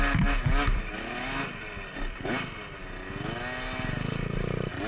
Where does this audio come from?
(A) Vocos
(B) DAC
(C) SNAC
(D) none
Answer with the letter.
D